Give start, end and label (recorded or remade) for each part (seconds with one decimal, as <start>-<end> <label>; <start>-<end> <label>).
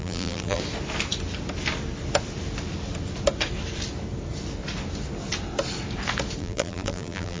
0.0-0.6 remade; 0.6-6.4 recorded; 6.4-7.4 remade